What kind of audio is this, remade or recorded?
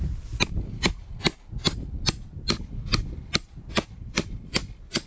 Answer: recorded